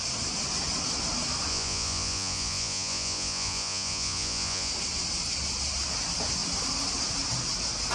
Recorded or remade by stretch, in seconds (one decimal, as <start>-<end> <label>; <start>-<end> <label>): 0.0-1.5 recorded; 1.5-4.7 remade; 4.7-7.9 recorded

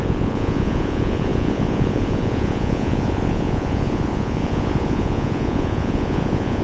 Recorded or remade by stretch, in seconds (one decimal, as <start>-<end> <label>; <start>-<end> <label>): 0.0-6.6 remade

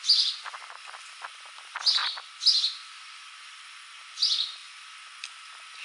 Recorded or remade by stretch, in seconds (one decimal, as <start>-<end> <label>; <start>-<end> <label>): 0.0-5.8 recorded